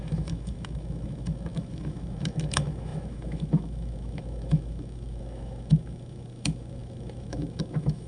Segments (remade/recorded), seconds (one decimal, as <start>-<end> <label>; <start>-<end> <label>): 0.0-8.1 remade